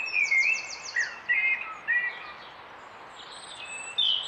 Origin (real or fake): real